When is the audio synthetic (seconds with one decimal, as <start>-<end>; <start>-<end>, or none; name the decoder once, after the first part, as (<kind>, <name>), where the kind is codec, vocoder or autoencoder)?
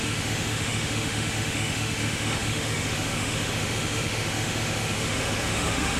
0.0-6.0 (autoencoder, DAC-VAE)